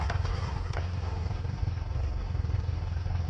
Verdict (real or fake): fake